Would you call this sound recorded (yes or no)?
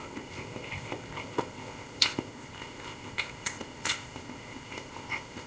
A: no